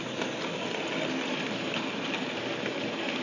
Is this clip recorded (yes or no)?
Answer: yes